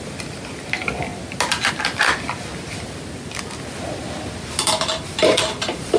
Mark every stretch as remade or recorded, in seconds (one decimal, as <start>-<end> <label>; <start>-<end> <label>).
0.0-6.0 recorded